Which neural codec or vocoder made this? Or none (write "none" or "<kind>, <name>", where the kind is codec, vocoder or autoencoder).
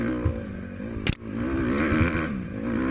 none